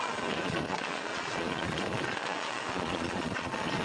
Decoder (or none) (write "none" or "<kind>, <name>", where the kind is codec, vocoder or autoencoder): vocoder, Vocos